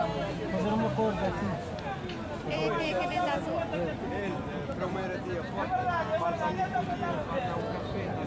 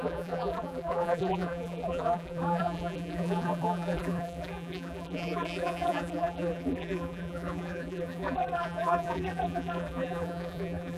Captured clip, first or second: first